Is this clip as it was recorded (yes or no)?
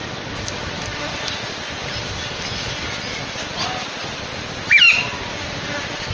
yes